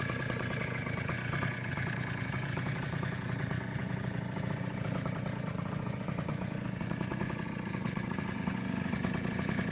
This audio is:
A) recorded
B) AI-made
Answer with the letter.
B